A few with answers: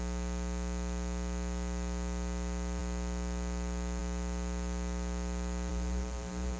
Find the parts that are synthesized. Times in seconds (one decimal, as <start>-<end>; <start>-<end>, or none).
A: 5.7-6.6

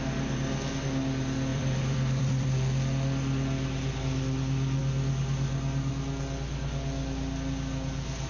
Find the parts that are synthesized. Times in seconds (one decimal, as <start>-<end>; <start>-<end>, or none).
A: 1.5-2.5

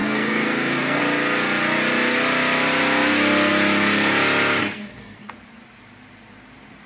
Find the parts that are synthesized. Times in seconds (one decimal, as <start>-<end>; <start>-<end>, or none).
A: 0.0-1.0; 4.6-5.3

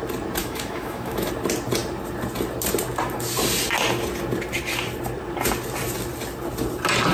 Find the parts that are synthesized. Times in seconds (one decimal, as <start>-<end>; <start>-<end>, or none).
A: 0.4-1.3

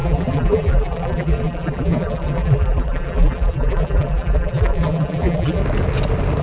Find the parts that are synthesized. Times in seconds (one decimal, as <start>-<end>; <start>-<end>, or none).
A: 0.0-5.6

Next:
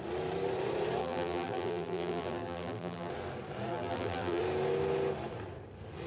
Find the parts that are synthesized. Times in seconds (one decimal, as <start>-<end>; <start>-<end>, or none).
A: 1.0-3.1; 3.7-4.4

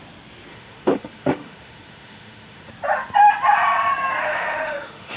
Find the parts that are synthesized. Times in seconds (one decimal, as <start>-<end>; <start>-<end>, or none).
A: 0.5-2.7; 4.2-5.2